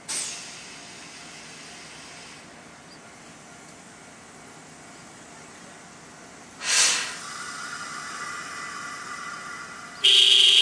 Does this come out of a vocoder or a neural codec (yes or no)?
no